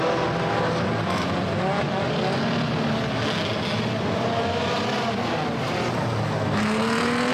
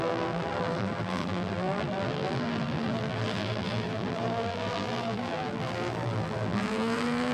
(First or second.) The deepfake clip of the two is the second